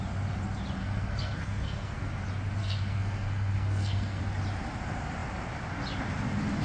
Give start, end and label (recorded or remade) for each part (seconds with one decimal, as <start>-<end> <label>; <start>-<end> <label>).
0.0-0.8 recorded; 0.8-2.1 remade; 2.1-2.6 recorded; 2.6-4.2 remade; 4.2-6.6 recorded